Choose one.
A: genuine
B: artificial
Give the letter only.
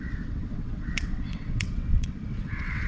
B